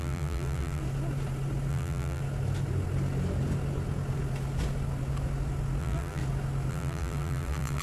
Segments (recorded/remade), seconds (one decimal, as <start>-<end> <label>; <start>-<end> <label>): 0.0-0.8 remade; 0.8-1.7 recorded; 1.7-2.2 remade; 2.2-5.8 recorded; 5.8-6.2 remade; 6.2-6.7 recorded; 6.7-7.8 remade